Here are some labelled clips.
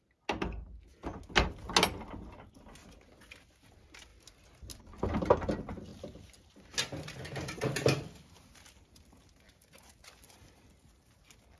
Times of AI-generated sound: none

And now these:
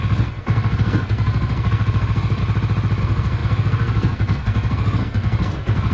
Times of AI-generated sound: 0.0-2.4; 3.0-5.9

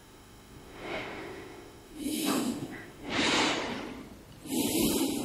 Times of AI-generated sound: 0.0-3.1